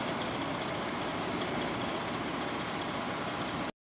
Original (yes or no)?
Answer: yes